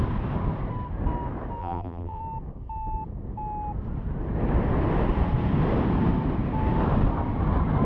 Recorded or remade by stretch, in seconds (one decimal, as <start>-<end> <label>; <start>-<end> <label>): 0.0-1.6 recorded; 1.6-2.2 remade; 2.2-7.8 recorded

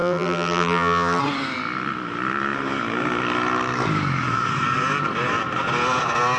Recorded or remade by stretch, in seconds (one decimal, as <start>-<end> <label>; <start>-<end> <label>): 0.0-1.2 remade; 1.2-6.4 recorded

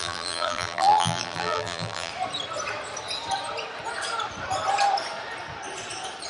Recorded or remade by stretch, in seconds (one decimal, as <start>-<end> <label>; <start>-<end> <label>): 0.0-2.1 remade; 2.1-6.3 recorded

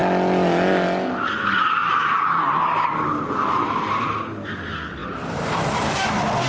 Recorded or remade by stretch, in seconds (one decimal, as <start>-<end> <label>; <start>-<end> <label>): 0.0-1.8 recorded; 1.8-2.5 remade; 2.5-5.0 recorded; 5.0-5.9 remade; 5.9-6.5 recorded